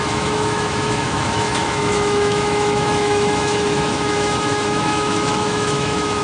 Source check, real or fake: fake